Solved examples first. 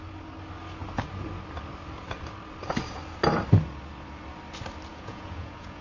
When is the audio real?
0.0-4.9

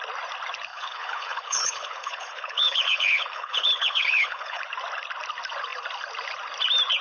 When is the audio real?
0.0-0.7; 4.6-7.0